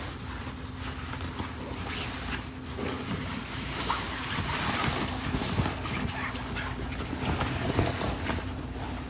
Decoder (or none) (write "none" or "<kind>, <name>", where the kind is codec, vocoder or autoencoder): none